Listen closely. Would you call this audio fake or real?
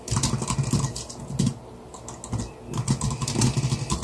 real